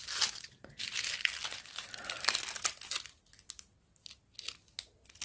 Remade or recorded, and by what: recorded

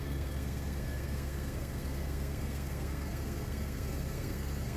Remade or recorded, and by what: remade, codec, SNAC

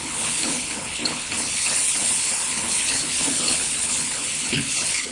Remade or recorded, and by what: remade, codec, HILCodec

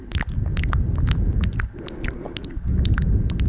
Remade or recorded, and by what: recorded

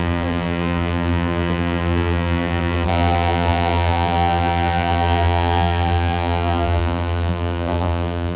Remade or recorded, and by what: remade, vocoder, BigVGAN v2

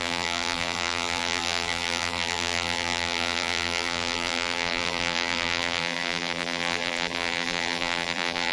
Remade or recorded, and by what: remade, vocoder, BigVGAN v2